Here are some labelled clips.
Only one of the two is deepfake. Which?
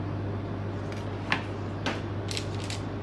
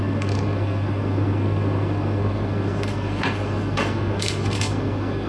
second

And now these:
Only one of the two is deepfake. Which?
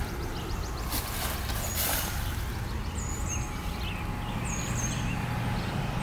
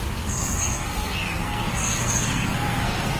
second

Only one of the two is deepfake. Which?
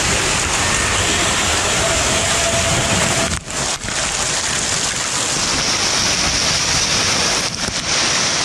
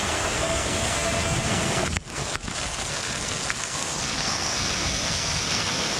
second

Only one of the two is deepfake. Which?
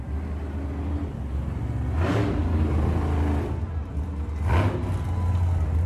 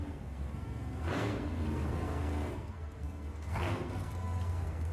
second